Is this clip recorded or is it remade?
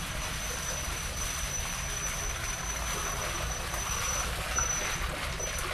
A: recorded